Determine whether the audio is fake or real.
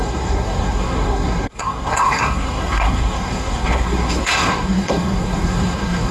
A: fake